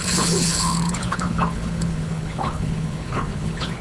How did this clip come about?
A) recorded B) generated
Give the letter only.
B